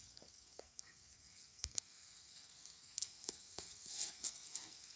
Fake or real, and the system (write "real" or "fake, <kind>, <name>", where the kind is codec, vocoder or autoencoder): fake, codec, SNAC